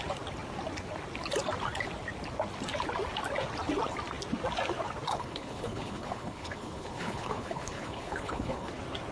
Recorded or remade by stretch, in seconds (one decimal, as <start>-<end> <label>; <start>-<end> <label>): 0.0-5.1 recorded; 5.1-8.7 remade; 8.7-9.1 recorded